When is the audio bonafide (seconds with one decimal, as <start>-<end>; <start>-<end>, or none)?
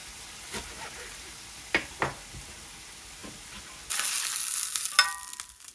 1.9-5.7